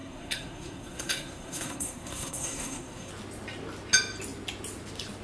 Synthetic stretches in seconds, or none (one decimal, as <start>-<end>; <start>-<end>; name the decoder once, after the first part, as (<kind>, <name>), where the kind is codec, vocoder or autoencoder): 0.0-3.1 (codec, SNAC)